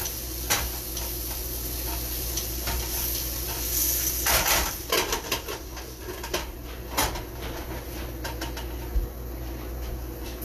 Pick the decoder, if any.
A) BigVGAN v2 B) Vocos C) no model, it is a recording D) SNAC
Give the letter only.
C